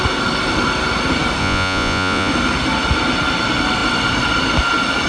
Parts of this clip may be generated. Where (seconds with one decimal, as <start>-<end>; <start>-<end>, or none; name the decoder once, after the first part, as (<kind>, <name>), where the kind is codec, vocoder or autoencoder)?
1.4-2.3 (vocoder, Vocos)